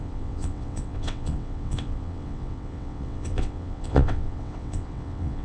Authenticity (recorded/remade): remade